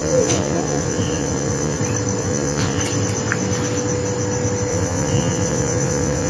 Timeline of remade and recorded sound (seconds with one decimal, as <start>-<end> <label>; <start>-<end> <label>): 0.0-1.8 remade; 1.8-2.2 recorded; 2.2-2.8 remade; 2.8-4.7 recorded; 4.7-6.3 remade